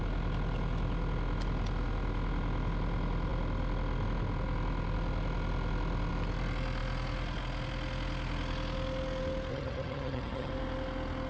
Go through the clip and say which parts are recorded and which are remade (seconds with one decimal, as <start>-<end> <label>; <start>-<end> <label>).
0.0-9.5 recorded; 9.5-10.5 remade; 10.5-11.3 recorded